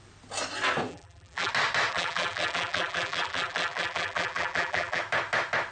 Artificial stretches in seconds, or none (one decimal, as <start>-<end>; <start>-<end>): 0.9-1.5; 1.9-5.0